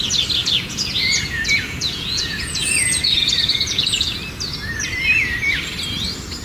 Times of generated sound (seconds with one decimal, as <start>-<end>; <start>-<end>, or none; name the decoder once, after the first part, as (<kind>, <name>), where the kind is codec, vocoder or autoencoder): 0.4-4.2 (vocoder, Vocos)